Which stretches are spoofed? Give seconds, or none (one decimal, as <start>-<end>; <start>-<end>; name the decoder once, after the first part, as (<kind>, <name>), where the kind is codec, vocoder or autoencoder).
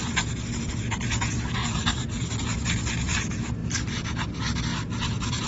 1.6-2.3 (vocoder, BigVGAN v2); 4.7-5.5